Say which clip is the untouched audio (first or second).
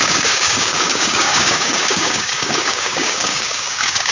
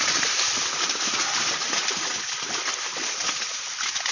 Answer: second